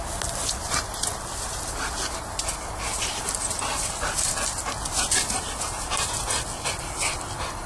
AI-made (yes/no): no